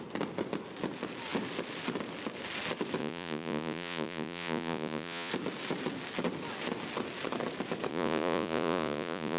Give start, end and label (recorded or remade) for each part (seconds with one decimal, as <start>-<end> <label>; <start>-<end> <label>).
0.0-3.0 recorded; 3.0-5.3 remade; 5.3-7.9 recorded; 7.9-9.4 remade